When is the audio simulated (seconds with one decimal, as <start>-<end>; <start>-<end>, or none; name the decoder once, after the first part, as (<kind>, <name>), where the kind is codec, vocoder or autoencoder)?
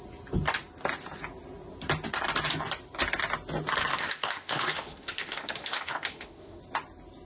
3.9-6.6 (autoencoder, DAC-VAE)